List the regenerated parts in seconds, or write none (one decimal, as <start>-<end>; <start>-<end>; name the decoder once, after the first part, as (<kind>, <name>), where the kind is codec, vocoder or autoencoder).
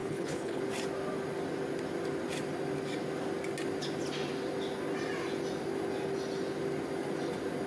0.0-0.6 (codec, HILCodec)